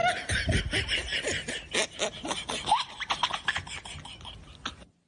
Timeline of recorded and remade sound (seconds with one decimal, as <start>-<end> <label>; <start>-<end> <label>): 0.0-5.1 recorded